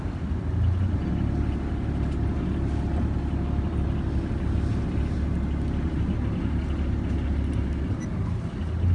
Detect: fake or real real